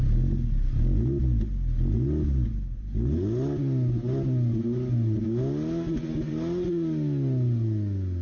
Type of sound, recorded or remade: recorded